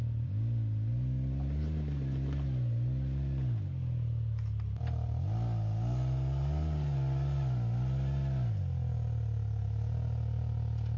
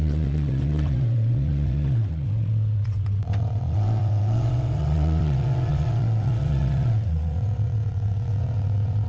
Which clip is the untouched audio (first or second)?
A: first